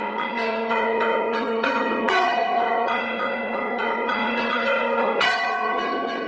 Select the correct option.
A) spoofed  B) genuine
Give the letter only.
A